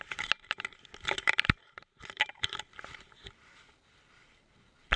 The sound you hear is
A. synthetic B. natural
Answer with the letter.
B